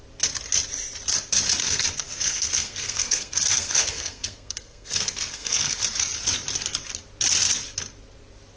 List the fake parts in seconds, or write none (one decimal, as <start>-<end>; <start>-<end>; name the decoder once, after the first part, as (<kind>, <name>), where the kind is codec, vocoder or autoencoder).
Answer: 1.6-5.8 (codec, SNAC)